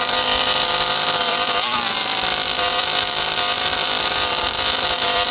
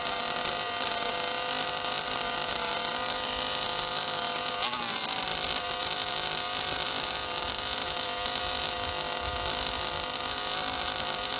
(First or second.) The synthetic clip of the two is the first